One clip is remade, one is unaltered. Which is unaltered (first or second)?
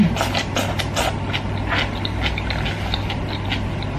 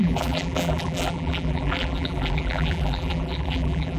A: first